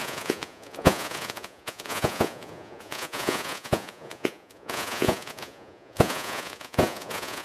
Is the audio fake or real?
fake